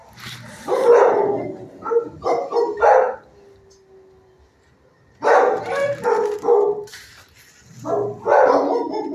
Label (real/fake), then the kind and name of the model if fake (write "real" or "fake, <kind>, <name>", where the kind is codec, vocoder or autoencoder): real